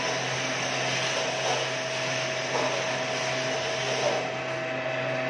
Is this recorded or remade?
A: recorded